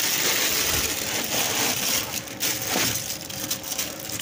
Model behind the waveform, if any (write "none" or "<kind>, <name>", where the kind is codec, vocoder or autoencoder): none